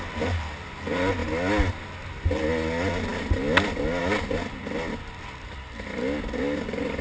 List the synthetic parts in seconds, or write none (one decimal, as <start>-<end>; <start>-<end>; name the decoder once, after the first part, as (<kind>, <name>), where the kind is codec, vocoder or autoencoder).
none

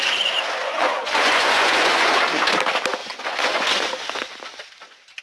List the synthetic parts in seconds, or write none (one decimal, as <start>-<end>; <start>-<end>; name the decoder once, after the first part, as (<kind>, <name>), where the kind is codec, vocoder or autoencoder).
0.6-2.2 (vocoder, Vocos); 3.0-3.9

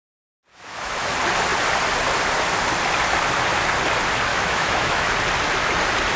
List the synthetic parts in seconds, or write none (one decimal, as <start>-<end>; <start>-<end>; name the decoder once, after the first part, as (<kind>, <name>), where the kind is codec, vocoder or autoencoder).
0.5-1.1 (autoencoder, DAC-VAE); 4.3-5.1

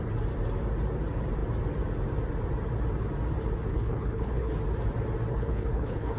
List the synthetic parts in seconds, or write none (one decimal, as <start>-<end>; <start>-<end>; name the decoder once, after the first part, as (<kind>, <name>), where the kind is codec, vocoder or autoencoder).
3.7-4.5 (codec, HILCodec); 5.3-6.2

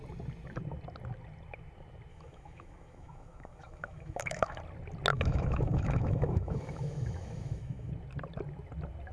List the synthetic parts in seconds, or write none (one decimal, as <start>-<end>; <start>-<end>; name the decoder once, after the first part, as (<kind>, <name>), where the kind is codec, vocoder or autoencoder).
2.1-4.6 (autoencoder, DAC-VAE); 5.1-7.9